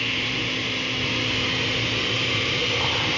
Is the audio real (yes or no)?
yes